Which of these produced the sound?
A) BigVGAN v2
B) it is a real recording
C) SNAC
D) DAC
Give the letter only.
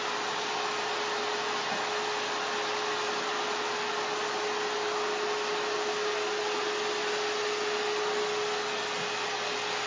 B